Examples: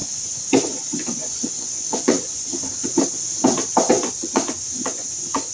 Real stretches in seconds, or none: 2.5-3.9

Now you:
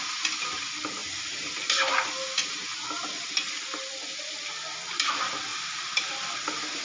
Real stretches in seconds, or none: 0.0-6.8

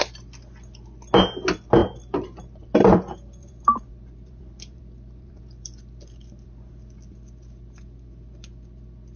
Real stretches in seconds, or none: 0.0-1.8; 6.7-9.2

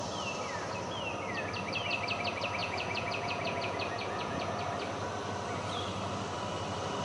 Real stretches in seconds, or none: 0.0-2.6; 4.5-7.0

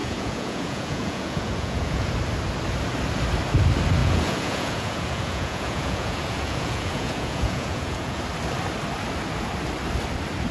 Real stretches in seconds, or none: 2.1-4.0; 8.2-10.5